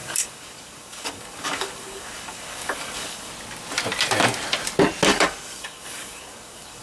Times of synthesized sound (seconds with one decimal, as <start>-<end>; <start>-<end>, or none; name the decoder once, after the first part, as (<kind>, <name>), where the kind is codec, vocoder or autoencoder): 0.0-3.3 (codec, DAC); 5.1-6.8